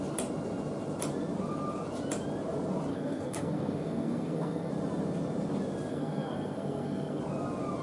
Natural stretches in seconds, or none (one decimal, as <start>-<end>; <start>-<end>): 0.0-2.9; 4.7-5.9; 7.2-7.8